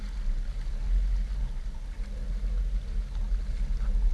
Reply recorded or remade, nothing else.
recorded